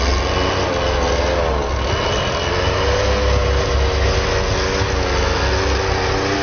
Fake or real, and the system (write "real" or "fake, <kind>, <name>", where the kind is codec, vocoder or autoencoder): real